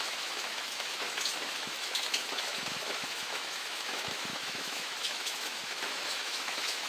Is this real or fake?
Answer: fake